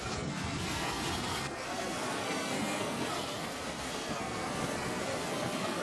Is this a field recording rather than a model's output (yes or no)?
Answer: no